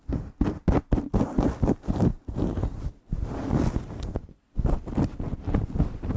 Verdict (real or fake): real